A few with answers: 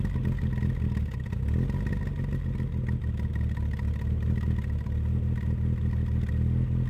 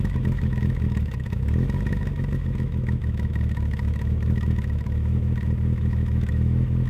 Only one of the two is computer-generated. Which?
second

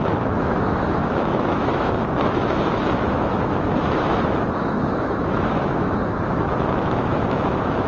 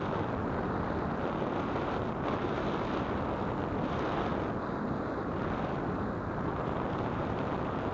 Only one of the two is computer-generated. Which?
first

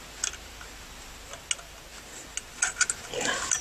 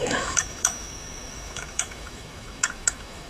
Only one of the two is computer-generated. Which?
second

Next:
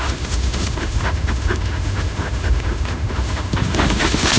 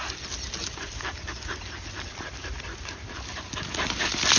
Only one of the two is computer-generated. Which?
first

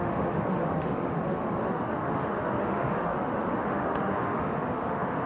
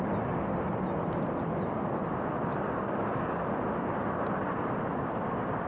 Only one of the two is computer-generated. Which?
first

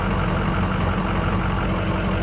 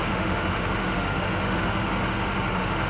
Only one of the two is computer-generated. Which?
second